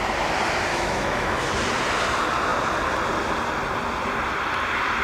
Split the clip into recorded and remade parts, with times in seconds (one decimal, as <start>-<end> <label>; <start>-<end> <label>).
0.0-0.7 recorded; 0.7-1.5 remade; 1.5-5.0 recorded